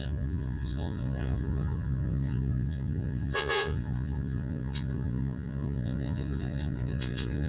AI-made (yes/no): yes